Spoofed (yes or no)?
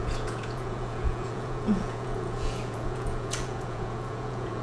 yes